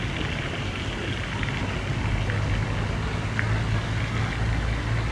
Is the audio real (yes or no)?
yes